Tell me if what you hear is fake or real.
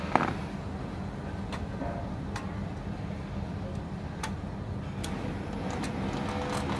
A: real